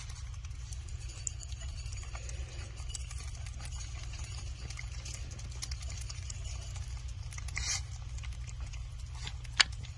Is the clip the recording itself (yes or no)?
yes